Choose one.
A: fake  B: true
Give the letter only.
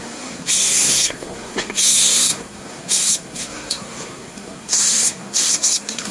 A